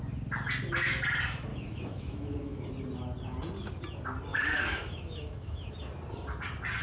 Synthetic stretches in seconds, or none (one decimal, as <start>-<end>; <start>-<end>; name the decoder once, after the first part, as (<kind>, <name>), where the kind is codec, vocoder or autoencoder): 1.5-2.7 (autoencoder, DAC-VAE); 4.3-5.7